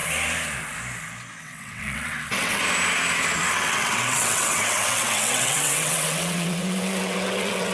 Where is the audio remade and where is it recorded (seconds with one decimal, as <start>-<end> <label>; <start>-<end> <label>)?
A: 0.0-1.4 recorded; 1.4-2.6 remade; 2.6-3.5 recorded; 3.5-7.7 remade